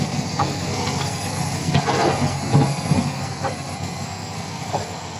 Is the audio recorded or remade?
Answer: remade